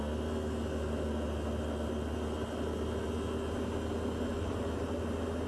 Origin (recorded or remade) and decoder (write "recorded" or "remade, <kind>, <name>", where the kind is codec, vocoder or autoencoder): recorded